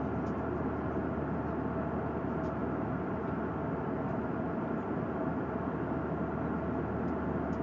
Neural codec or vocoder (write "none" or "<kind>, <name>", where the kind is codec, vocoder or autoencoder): none